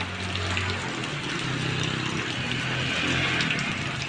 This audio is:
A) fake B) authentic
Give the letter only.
B